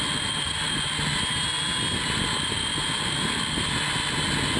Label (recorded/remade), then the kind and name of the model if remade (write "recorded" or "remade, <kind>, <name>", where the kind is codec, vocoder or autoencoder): recorded